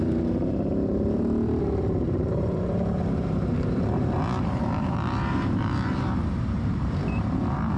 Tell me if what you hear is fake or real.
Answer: fake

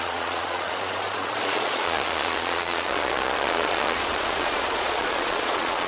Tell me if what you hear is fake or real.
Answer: fake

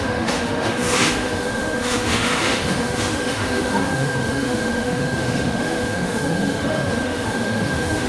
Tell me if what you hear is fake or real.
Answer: fake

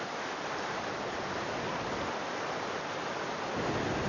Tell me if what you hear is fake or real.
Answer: real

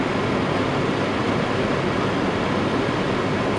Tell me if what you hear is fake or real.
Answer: fake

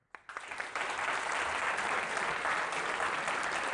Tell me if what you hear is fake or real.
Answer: fake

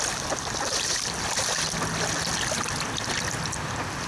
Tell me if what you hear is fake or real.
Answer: real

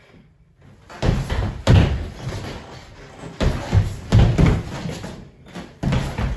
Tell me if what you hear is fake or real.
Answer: real